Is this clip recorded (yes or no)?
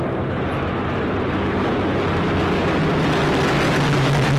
yes